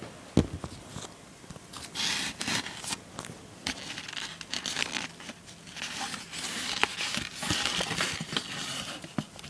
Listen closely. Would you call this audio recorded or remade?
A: recorded